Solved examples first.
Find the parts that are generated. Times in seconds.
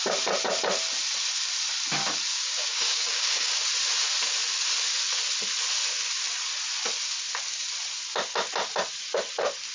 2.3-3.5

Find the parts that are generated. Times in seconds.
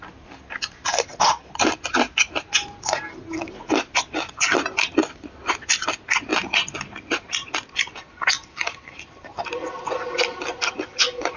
none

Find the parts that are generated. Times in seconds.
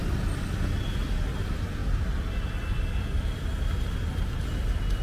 none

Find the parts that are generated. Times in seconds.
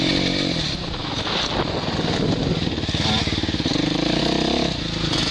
none